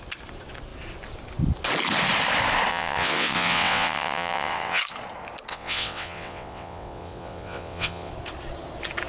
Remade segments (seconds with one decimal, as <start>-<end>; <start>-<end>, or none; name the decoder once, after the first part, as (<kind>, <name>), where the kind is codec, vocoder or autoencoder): 2.7-4.8 (vocoder, WaveNeXt); 5.5-8.1